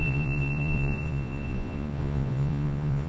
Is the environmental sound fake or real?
fake